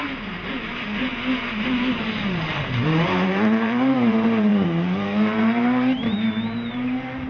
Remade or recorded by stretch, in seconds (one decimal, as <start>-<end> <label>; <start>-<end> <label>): 0.0-1.1 remade; 1.1-1.9 recorded; 1.9-7.3 remade